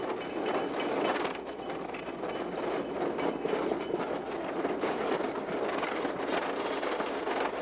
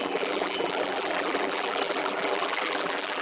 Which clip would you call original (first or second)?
first